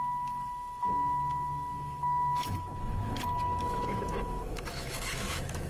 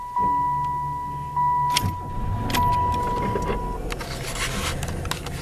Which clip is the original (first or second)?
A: second